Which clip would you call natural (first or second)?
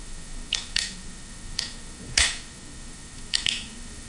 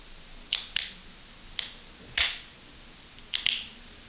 second